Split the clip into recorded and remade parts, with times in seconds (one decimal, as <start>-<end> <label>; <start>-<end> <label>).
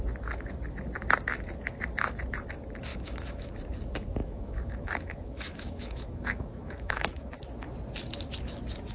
0.0-2.9 recorded; 2.9-3.5 remade; 3.5-4.2 recorded; 4.2-7.3 remade; 7.3-8.9 recorded